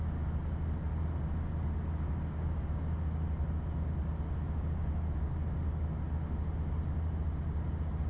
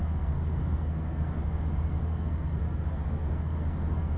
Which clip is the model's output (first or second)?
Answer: second